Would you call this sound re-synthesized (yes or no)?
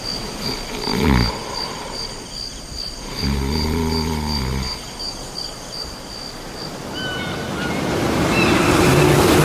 no